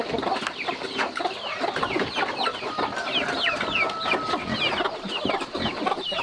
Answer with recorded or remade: recorded